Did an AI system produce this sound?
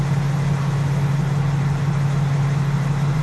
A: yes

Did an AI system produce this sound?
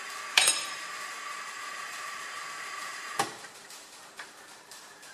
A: yes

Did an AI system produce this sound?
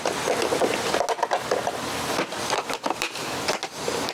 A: no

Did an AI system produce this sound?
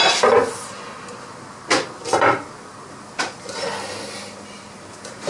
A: no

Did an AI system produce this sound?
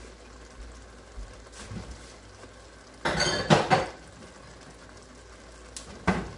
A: no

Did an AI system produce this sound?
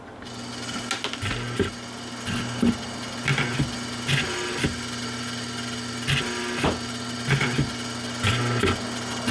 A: no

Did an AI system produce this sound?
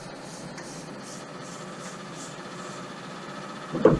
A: yes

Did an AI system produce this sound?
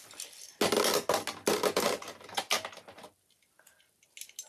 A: no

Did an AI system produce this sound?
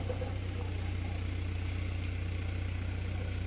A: no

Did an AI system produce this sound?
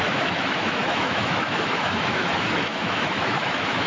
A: yes